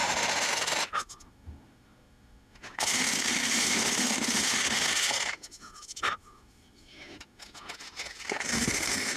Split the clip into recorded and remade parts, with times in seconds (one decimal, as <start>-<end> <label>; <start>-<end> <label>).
0.0-9.2 remade